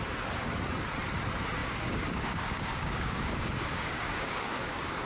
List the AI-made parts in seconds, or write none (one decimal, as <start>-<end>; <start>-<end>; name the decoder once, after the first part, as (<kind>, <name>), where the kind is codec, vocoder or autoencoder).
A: 1.6-5.1 (codec, DAC)